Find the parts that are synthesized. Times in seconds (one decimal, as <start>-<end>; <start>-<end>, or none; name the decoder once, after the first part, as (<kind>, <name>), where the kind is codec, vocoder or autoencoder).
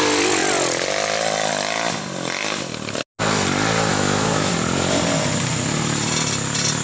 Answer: 3.9-4.5 (autoencoder, DAC-VAE)